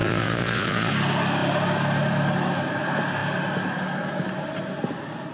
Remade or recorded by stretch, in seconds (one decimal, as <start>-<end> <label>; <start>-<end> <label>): 0.0-0.9 remade; 0.9-5.3 recorded